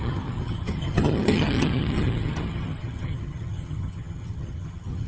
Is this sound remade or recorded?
remade